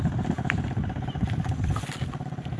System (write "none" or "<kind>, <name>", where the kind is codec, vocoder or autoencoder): none